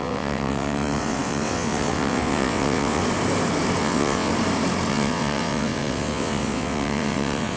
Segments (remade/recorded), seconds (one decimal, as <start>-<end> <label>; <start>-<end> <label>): 0.0-3.0 remade; 3.0-3.8 recorded; 3.8-4.3 remade; 4.3-4.9 recorded; 4.9-7.6 remade